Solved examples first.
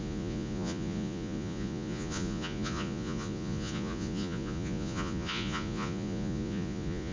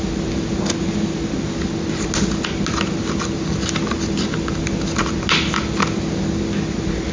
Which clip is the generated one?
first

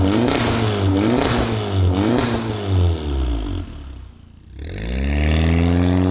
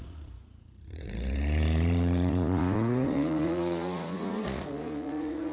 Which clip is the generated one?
second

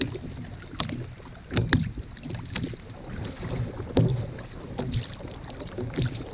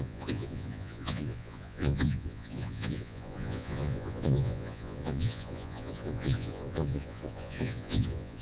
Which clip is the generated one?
second